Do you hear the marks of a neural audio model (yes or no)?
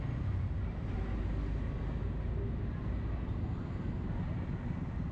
no